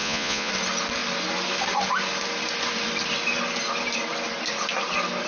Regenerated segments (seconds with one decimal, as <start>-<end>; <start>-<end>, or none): 0.0-0.5